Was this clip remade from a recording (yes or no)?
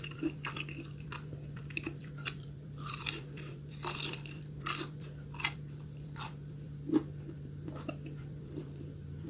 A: yes